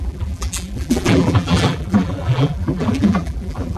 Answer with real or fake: fake